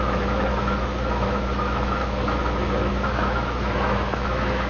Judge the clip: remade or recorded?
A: remade